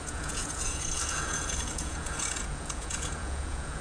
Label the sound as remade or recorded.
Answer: remade